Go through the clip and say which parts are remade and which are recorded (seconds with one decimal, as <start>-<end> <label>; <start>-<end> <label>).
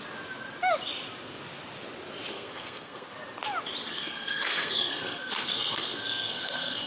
0.0-2.3 recorded; 2.3-3.1 remade; 3.1-3.9 recorded; 3.9-6.9 remade